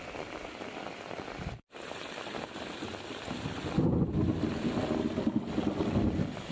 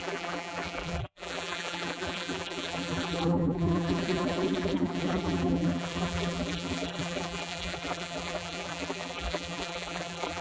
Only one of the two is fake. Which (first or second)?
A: second